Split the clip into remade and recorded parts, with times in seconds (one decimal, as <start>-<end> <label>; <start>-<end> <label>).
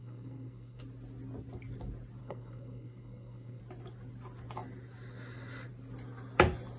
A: 0.0-0.8 remade; 0.8-2.2 recorded; 2.2-3.6 remade; 3.6-6.8 recorded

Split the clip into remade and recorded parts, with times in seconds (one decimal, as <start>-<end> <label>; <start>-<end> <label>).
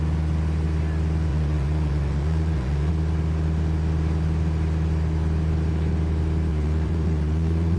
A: 0.0-1.3 recorded; 1.3-2.9 remade; 2.9-6.5 recorded; 6.5-7.8 remade